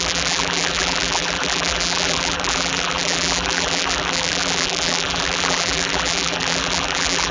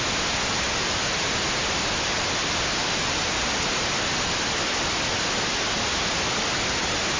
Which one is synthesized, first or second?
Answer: first